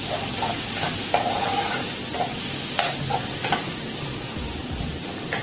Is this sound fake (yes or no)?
no